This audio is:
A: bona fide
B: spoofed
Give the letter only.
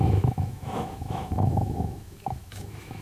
B